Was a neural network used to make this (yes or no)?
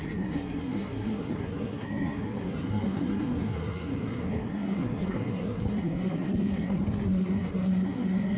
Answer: yes